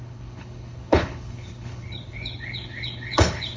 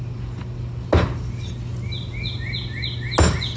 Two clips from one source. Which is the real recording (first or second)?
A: second